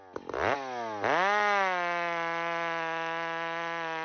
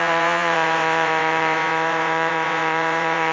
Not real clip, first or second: second